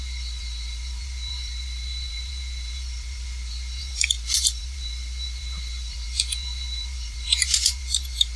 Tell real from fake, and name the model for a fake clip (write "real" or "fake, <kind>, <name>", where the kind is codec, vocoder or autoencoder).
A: fake, vocoder, BigVGAN v2